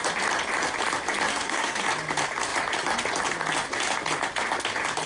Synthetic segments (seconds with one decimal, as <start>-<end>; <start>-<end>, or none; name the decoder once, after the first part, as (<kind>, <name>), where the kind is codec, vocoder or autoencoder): 1.3-1.8 (codec, SNAC)